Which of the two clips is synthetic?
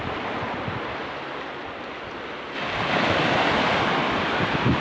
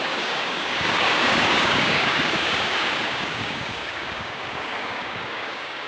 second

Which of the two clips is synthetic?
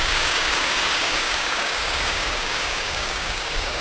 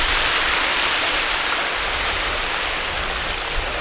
first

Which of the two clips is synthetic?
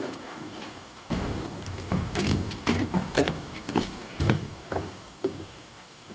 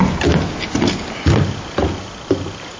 first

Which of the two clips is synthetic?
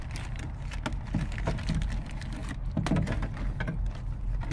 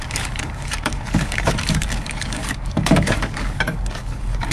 second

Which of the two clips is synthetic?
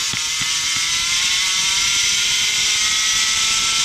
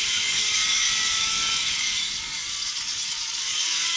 second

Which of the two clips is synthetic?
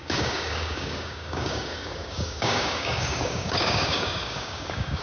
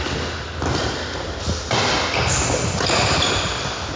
first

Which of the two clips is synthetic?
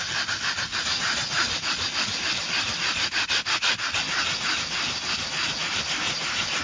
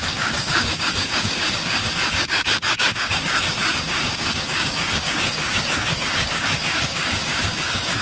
second